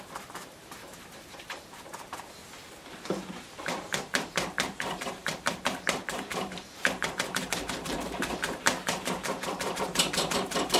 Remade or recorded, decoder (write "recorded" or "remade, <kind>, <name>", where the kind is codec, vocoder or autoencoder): remade, vocoder, BigVGAN v2